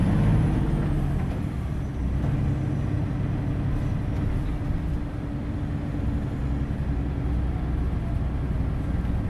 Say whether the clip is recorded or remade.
recorded